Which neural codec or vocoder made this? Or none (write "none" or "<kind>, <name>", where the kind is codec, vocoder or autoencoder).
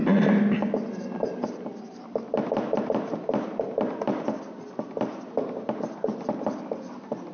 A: none